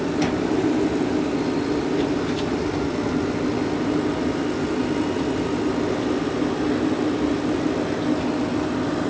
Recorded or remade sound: recorded